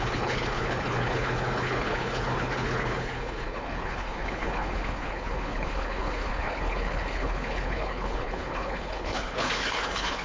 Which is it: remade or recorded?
remade